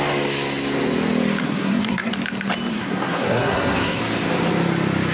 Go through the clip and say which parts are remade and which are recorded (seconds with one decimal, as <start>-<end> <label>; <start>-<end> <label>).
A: 0.0-1.4 recorded; 1.4-2.1 remade; 2.1-2.7 recorded; 2.7-4.0 remade; 4.0-5.1 recorded